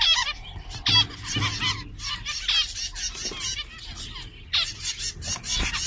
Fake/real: real